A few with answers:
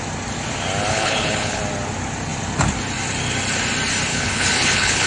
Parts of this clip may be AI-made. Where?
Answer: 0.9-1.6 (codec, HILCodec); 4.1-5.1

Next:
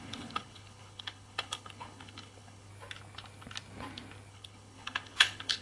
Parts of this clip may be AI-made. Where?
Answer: 0.0-2.7 (codec, HILCodec); 4.3-5.6

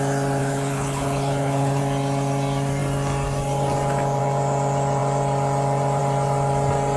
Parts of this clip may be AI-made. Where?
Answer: 0.4-1.8 (codec, HILCodec)